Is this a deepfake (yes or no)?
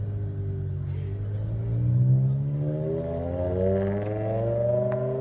no